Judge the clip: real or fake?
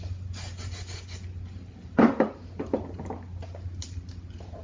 real